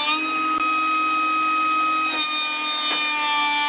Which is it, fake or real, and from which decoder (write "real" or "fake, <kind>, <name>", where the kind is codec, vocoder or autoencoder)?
real